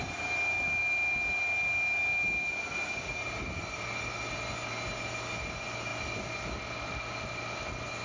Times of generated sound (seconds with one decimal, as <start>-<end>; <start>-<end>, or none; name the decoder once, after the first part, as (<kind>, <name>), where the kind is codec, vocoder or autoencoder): none